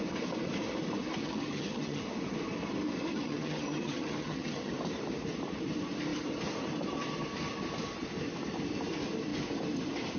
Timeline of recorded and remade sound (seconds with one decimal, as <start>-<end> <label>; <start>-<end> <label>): 0.0-1.2 recorded; 1.2-2.0 remade; 2.0-3.1 recorded; 3.1-4.7 remade; 4.7-10.2 recorded